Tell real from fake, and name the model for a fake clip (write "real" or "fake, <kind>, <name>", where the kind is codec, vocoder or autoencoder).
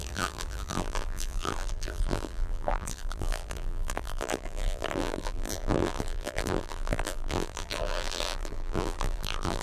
fake, vocoder, BigVGAN v2